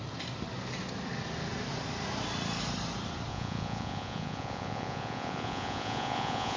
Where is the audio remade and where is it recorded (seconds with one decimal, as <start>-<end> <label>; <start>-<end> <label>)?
0.0-3.3 recorded; 3.3-6.6 remade